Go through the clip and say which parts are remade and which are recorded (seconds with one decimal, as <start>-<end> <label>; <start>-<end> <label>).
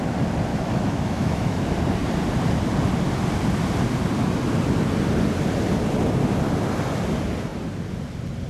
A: 0.0-0.5 recorded; 0.5-1.6 remade; 1.6-8.5 recorded